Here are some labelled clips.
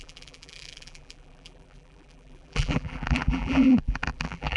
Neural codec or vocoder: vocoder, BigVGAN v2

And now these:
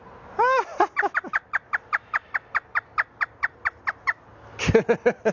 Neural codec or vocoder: none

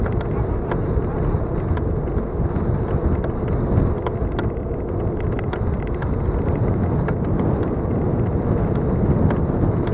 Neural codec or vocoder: none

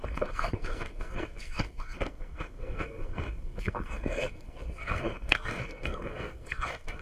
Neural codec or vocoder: codec, SNAC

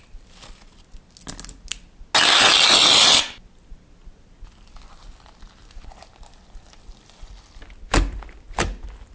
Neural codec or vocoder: none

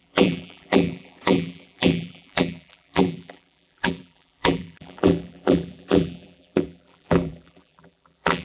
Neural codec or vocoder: vocoder, BigVGAN v2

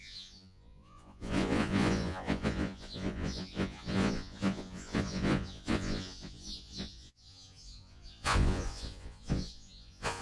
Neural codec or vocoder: vocoder, Vocos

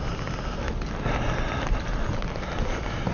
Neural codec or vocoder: none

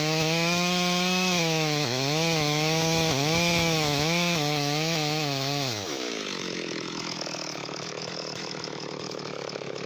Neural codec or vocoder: autoencoder, DAC-VAE